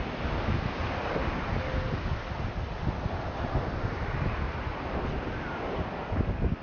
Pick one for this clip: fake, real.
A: real